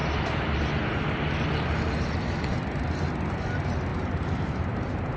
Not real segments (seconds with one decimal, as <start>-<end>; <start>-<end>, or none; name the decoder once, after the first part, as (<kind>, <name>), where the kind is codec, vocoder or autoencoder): none